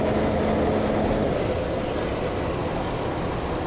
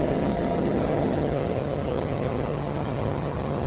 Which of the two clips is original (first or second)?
first